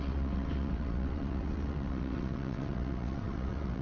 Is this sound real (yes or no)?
no